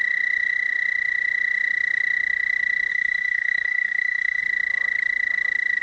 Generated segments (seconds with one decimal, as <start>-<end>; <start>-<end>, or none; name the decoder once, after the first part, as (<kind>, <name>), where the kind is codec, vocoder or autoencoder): 2.9-4.4 (codec, SNAC)